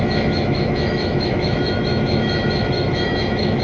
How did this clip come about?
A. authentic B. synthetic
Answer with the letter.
B